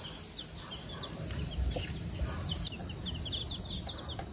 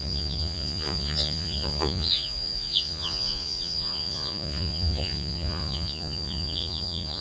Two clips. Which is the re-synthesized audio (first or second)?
second